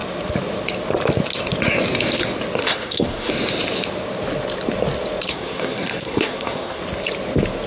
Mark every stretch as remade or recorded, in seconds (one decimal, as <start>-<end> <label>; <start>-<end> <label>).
0.0-2.6 recorded; 2.6-3.3 remade; 3.3-5.3 recorded; 5.3-6.8 remade; 6.8-7.7 recorded